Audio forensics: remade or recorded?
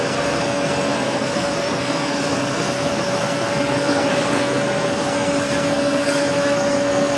remade